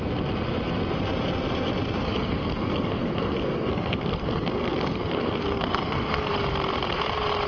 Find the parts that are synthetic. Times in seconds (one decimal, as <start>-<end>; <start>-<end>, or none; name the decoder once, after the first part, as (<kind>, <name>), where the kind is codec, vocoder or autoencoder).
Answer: 2.0-6.3 (codec, SNAC)